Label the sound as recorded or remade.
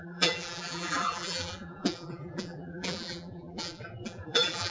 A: remade